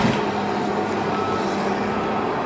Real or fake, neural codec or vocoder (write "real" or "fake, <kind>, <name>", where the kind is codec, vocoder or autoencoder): real